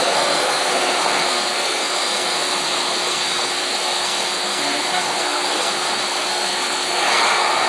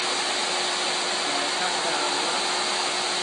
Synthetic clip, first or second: first